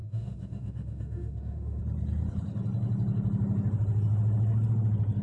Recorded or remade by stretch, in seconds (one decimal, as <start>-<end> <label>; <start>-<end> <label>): 0.0-1.8 remade; 1.8-5.2 recorded